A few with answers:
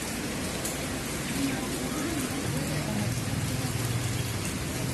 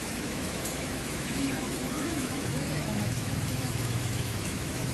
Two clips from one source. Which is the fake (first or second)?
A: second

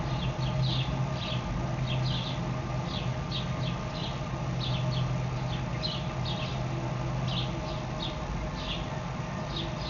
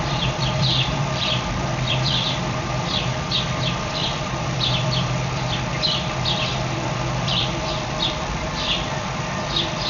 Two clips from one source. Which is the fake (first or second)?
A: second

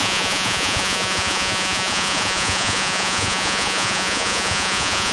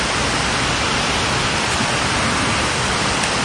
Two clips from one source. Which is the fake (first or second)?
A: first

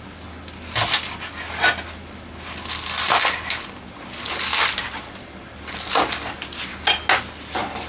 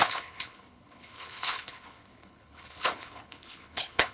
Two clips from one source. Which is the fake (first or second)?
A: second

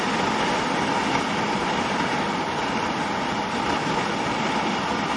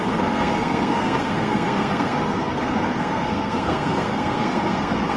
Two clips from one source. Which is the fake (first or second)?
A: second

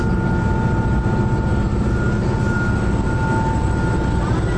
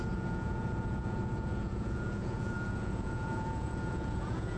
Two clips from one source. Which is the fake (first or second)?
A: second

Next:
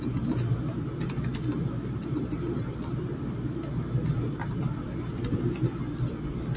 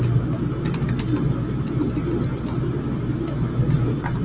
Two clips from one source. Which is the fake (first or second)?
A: first